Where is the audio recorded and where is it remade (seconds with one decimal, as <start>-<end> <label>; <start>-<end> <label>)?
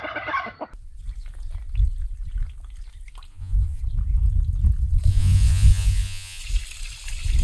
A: 0.0-3.3 recorded; 3.3-3.8 remade; 3.8-5.1 recorded; 5.1-6.4 remade; 6.4-7.4 recorded